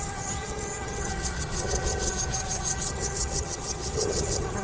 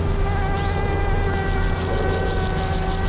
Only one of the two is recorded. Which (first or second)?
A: second